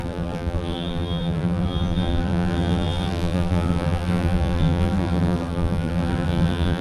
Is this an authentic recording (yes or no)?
no